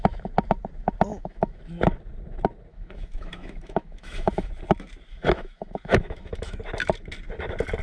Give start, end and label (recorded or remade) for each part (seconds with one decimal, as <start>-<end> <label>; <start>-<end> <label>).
0.0-1.1 recorded; 1.1-1.6 remade; 1.6-2.7 recorded; 2.7-4.5 remade; 4.5-5.1 recorded; 5.1-6.6 remade; 6.6-7.8 recorded